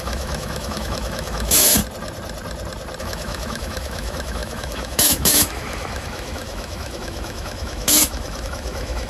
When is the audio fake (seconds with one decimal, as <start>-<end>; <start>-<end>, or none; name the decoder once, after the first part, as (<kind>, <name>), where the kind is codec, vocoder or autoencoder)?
0.0-1.8 (autoencoder, DAC-VAE); 3.0-9.1